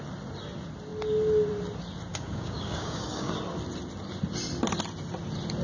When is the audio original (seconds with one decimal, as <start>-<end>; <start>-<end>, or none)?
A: 0.0-2.1; 3.3-5.6